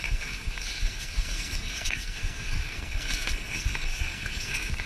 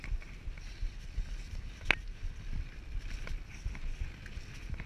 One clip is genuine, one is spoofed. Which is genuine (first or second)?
second